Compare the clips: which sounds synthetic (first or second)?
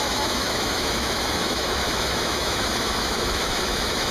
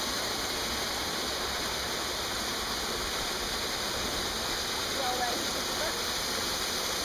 first